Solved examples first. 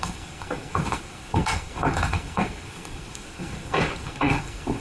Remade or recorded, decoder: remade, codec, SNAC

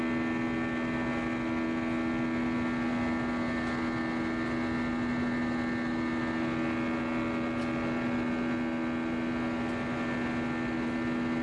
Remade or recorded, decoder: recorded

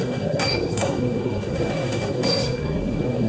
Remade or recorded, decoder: remade, codec, SNAC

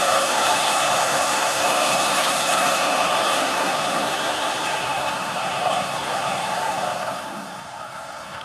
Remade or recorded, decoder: remade, codec, SNAC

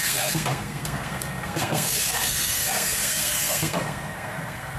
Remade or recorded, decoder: remade, codec, SNAC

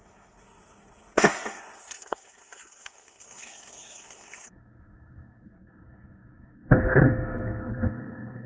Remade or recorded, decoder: remade, codec, SNAC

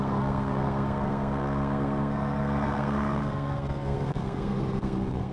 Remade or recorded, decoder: remade, codec, SNAC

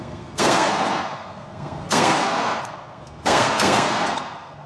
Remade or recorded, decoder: remade, codec, SNAC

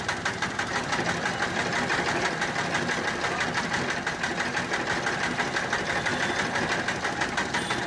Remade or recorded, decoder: recorded